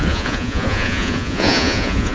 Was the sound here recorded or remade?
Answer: remade